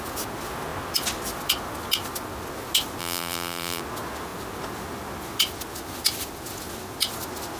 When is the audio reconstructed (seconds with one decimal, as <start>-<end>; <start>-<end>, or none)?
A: 3.0-3.8